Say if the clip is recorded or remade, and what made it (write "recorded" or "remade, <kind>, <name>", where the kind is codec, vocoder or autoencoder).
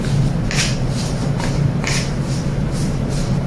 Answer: recorded